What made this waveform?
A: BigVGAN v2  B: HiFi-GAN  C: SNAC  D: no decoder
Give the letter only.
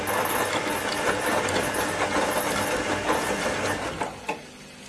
D